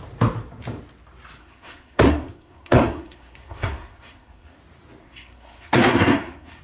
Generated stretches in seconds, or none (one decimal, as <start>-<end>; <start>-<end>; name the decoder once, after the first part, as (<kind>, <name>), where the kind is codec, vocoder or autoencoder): 1.4-4.6 (codec, SNAC); 5.0-6.6